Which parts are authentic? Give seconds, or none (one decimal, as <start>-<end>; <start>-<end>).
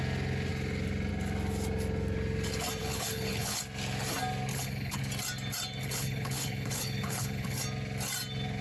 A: 0.0-2.8; 3.6-4.5; 5.0-5.8; 7.6-8.6